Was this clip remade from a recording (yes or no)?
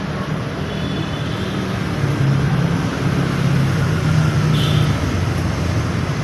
no